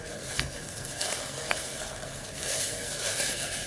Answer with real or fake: fake